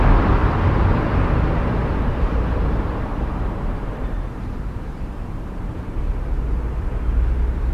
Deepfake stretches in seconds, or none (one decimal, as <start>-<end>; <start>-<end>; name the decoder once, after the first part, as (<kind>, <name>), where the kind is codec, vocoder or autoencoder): 1.8-6.0 (vocoder, BigVGAN v2)